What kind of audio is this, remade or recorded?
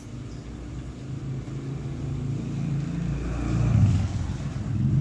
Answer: recorded